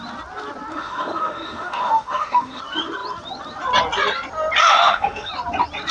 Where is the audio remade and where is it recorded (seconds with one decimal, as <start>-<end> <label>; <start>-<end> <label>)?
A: 0.0-0.7 recorded; 0.7-2.6 remade; 2.6-4.6 recorded; 4.6-5.3 remade; 5.3-5.9 recorded

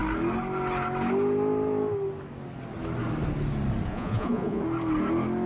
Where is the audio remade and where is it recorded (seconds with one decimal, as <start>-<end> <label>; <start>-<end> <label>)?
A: 0.0-3.9 recorded; 3.9-4.6 remade; 4.6-5.5 recorded

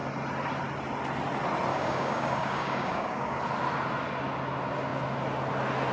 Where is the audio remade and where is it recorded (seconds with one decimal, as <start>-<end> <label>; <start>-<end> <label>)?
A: 0.0-1.7 recorded; 1.7-3.4 remade; 3.4-5.9 recorded

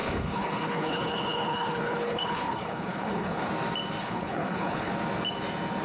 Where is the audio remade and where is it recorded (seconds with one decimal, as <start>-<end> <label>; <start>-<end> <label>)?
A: 0.0-3.5 remade; 3.5-4.0 recorded; 4.0-4.9 remade; 4.9-5.8 recorded

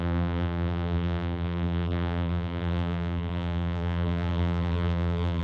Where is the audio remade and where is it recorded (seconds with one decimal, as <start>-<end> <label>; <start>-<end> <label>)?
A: 0.0-5.4 remade

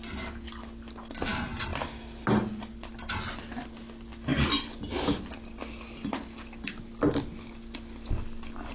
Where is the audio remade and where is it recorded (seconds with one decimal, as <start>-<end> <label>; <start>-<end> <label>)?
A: 0.0-8.7 recorded

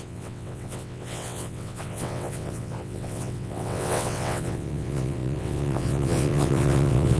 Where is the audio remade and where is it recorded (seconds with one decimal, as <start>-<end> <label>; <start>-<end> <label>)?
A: 0.0-7.2 remade